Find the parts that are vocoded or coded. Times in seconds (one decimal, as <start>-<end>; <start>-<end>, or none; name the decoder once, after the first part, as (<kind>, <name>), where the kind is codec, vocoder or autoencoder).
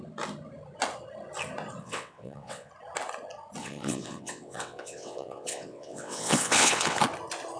1.8-2.7 (vocoder, WaveNeXt); 3.6-7.0